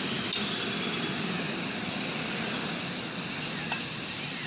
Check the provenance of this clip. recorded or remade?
recorded